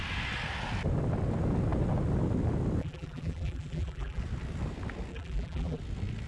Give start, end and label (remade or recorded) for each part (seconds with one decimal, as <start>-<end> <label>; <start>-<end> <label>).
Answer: 0.0-2.8 recorded; 2.8-4.2 remade; 4.2-5.1 recorded; 5.1-5.8 remade; 5.8-6.3 recorded